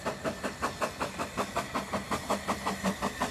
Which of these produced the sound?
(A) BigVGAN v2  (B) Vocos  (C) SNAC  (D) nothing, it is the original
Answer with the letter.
D